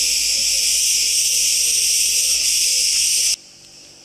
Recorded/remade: recorded